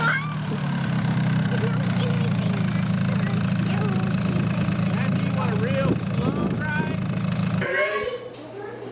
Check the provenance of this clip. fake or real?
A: real